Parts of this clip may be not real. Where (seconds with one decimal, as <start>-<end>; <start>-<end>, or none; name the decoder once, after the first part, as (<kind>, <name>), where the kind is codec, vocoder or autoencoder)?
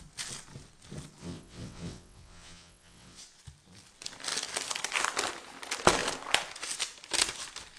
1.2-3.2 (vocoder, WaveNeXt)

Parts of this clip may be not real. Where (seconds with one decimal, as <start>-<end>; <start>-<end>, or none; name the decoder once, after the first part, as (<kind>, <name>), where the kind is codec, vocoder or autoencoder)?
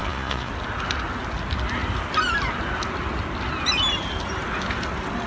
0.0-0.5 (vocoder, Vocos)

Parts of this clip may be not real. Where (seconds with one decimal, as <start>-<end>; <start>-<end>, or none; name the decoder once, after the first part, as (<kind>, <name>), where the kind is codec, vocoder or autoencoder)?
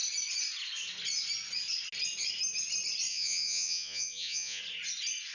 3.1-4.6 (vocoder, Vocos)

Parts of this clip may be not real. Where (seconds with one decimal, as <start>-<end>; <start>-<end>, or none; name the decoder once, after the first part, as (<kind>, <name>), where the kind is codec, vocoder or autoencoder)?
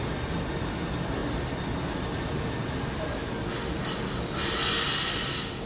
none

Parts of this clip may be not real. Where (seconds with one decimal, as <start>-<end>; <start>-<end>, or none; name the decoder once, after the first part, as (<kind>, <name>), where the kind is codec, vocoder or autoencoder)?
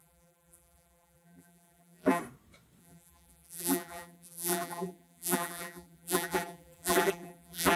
0.0-2.2 (vocoder, BigVGAN v2); 2.8-7.8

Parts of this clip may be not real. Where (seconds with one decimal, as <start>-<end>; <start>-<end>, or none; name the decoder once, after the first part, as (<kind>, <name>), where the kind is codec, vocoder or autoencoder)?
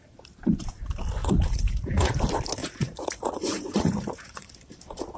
1.2-2.1 (vocoder, Vocos); 2.6-4.5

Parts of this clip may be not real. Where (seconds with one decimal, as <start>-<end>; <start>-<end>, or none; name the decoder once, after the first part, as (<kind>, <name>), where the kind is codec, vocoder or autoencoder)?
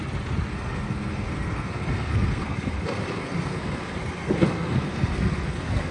0.5-5.9 (codec, SNAC)